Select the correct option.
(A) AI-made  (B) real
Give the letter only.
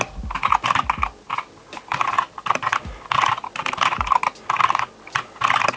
B